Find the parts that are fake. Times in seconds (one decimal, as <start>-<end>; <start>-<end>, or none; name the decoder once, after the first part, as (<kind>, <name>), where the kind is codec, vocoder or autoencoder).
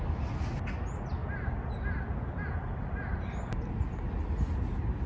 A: none